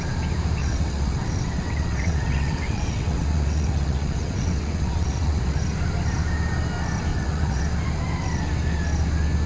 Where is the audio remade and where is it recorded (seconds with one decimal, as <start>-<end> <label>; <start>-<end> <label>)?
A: 0.0-0.6 recorded; 0.6-5.6 remade; 5.6-7.1 recorded; 7.1-7.6 remade; 7.6-9.5 recorded